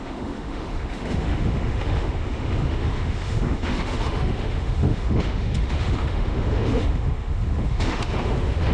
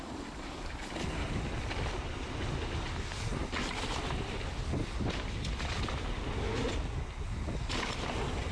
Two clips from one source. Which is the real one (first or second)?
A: second